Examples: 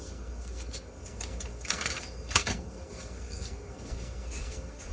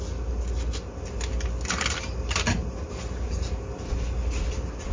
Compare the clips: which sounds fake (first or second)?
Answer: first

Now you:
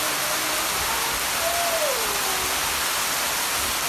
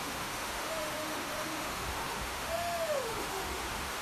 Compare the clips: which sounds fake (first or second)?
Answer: second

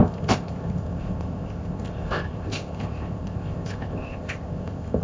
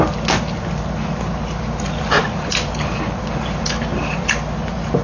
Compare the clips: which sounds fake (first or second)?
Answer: first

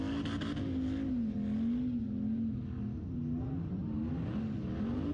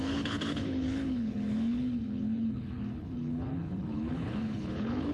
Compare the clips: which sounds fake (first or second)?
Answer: second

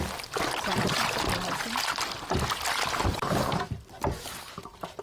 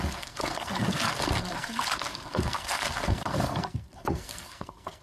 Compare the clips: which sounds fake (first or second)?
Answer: second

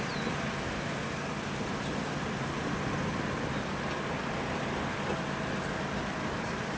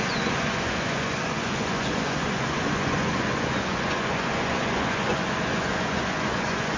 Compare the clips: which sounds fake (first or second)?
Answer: second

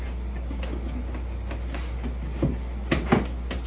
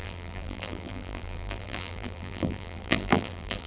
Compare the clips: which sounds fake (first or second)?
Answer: second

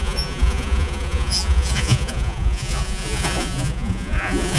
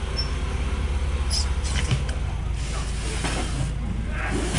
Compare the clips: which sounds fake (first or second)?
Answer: first